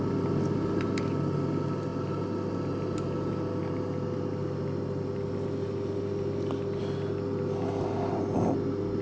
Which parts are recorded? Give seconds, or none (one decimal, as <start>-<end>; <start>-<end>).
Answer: 0.0-9.0